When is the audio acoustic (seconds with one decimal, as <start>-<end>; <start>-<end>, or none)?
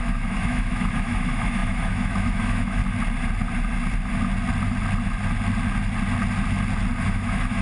2.8-7.0